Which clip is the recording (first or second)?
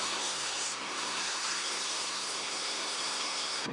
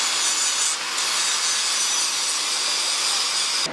second